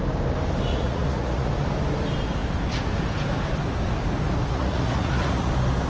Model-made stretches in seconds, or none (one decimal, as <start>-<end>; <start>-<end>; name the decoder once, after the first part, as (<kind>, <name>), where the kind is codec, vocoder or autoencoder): 0.7-1.5 (vocoder, Vocos); 4.5-5.5